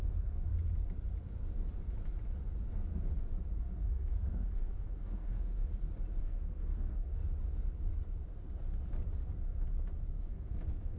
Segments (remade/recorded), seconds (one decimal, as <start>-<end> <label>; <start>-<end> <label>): 0.0-0.5 remade; 0.5-3.5 recorded; 3.5-5.7 remade; 5.7-6.2 recorded; 6.2-7.2 remade; 7.2-10.1 recorded; 10.1-11.0 remade